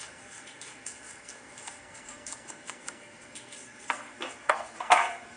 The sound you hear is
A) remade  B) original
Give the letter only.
A